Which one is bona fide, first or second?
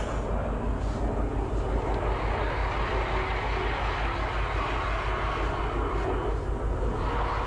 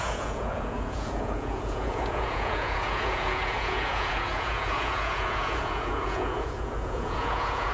first